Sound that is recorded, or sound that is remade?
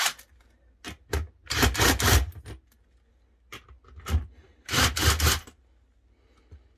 recorded